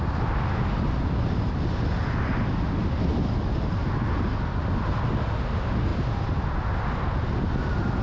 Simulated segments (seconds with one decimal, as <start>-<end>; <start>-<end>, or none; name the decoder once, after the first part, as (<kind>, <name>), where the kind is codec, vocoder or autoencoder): none